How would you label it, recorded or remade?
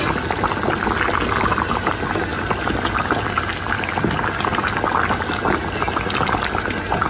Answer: recorded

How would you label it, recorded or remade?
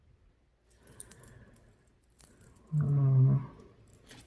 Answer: recorded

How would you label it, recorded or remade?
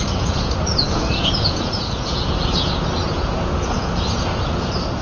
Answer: remade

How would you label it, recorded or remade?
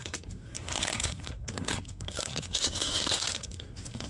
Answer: remade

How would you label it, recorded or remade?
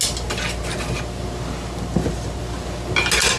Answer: recorded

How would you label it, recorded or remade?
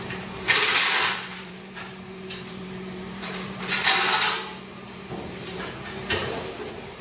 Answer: remade